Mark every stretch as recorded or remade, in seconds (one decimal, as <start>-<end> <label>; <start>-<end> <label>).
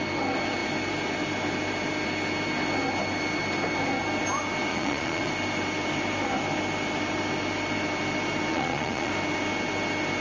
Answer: 0.0-4.7 recorded; 4.7-5.3 remade; 5.3-8.5 recorded; 8.5-9.1 remade; 9.1-10.2 recorded